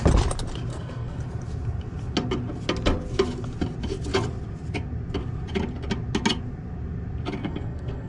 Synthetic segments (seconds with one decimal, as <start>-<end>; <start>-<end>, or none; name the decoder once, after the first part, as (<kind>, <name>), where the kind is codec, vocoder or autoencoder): 0.7-1.2 (codec, SNAC); 7.4-8.1

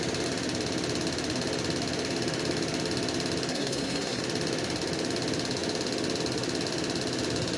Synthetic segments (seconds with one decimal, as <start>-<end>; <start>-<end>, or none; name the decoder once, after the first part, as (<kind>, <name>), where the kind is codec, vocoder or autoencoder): 3.5-4.2 (codec, SNAC)

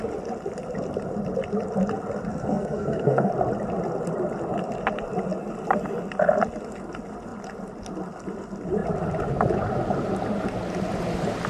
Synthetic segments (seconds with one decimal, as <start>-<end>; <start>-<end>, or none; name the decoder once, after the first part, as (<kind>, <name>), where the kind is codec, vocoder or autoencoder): 2.3-3.3 (codec, SNAC)

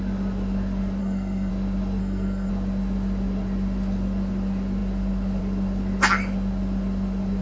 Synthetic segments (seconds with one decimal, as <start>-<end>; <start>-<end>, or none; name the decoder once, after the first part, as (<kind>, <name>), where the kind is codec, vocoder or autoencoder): 1.0-1.5 (codec, SNAC); 2.0-2.5

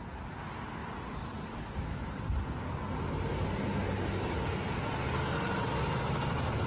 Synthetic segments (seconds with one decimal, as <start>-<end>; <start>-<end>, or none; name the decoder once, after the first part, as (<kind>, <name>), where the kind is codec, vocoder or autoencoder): none